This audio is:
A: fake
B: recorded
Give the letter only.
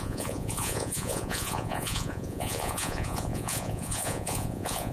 A